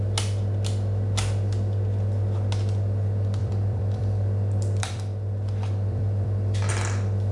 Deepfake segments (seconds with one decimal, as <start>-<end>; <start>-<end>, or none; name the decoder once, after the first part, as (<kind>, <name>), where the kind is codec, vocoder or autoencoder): 3.4-6.7 (vocoder, BigVGAN v2)